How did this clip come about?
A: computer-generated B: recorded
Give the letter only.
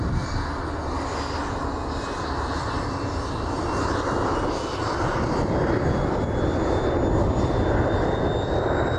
B